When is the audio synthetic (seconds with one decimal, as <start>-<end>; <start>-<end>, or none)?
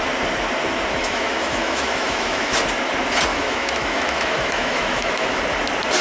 1.0-2.6; 3.3-5.4